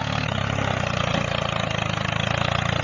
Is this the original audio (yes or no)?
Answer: yes